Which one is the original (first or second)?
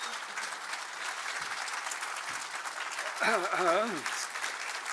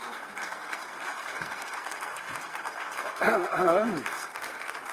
first